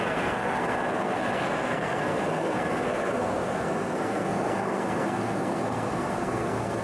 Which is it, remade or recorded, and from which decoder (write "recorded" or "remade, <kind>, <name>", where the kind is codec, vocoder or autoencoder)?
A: remade, codec, SNAC